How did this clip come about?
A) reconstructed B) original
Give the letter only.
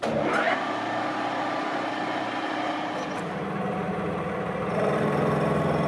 B